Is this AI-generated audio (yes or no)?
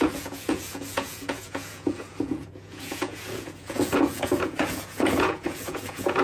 yes